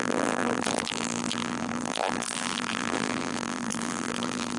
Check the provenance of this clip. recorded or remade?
remade